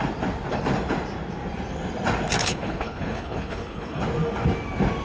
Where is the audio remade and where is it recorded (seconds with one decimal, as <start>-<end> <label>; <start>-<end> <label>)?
0.0-2.4 recorded; 2.4-4.0 remade; 4.0-5.0 recorded